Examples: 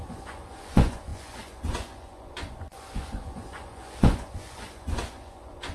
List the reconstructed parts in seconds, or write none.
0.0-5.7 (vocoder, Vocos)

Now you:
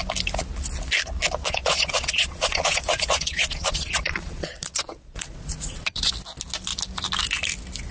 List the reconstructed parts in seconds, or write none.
1.4-6.1 (vocoder, Vocos)